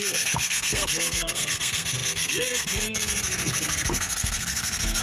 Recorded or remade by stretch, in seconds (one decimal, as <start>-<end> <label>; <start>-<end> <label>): 0.0-5.0 remade